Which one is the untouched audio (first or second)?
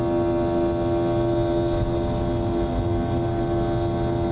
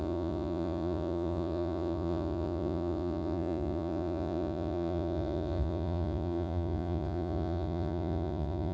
first